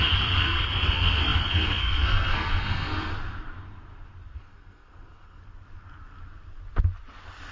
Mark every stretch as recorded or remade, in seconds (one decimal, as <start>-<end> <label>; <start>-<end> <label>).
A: 0.0-3.1 remade; 3.1-4.4 recorded; 4.4-5.4 remade; 5.4-7.5 recorded